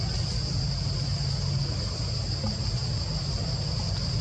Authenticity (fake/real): real